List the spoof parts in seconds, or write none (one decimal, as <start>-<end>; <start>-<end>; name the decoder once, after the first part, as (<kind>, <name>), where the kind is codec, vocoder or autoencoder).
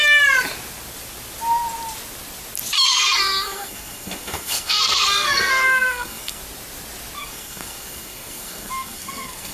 2.8-6.4 (codec, SNAC); 7.2-9.5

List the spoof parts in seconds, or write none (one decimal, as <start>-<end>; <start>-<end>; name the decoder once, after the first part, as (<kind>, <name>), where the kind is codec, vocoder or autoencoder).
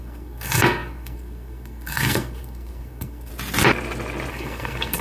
0.0-3.3 (codec, SNAC); 4.3-5.0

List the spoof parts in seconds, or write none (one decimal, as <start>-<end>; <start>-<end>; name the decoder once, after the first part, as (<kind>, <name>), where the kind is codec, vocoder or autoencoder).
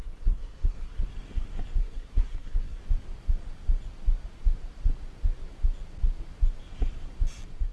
0.0-1.0 (codec, SNAC); 1.8-2.8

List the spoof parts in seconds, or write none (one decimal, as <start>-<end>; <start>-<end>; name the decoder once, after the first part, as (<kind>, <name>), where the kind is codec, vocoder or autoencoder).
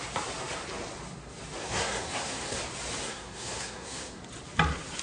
1.6-2.6 (codec, SNAC); 3.0-4.2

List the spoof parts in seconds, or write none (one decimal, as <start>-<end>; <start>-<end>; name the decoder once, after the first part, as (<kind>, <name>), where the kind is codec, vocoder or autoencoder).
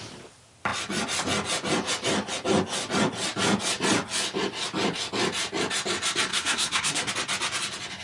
6.3-7.1 (codec, SNAC)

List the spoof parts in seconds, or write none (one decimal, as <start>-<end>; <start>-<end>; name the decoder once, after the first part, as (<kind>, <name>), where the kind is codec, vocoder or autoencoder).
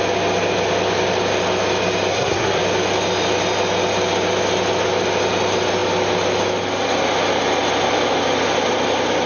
2.1-2.6 (codec, SNAC)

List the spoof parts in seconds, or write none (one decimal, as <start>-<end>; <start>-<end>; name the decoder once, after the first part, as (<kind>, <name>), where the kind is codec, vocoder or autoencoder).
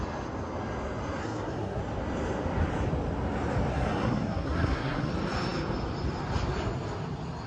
1.2-1.8 (codec, SNAC); 3.7-5.1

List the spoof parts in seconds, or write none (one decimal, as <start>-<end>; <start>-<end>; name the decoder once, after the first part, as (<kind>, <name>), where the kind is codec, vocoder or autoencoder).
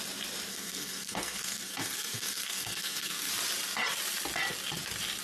0.5-3.3 (codec, SNAC)